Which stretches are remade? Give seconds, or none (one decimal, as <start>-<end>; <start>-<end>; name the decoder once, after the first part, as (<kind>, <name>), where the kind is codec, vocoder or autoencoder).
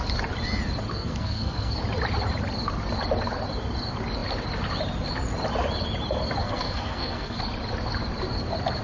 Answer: 0.9-1.7 (codec, SNAC); 6.4-7.4